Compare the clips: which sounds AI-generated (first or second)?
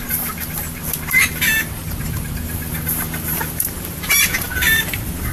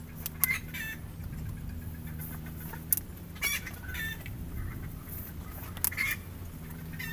first